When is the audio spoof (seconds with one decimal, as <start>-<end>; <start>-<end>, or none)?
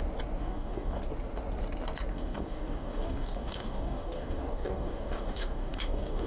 0.4-1.0; 2.1-6.3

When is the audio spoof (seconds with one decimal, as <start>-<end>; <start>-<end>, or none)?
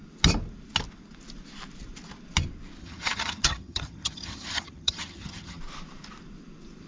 2.8-5.6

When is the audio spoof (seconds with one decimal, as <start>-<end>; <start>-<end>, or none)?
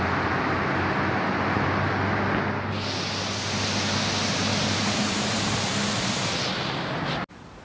4.5-6.1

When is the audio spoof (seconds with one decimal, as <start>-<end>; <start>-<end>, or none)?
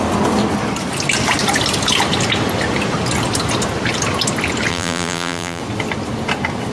4.7-5.6